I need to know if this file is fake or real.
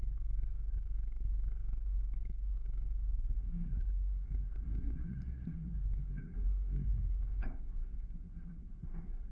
fake